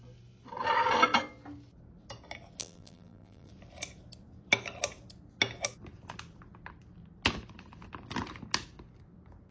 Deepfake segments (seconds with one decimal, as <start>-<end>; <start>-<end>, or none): 2.6-3.5